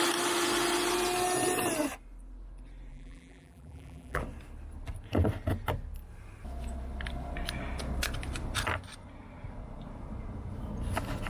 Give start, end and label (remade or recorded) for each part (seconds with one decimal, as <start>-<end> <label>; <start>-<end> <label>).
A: 0.0-2.9 recorded; 2.9-4.2 remade; 4.2-11.3 recorded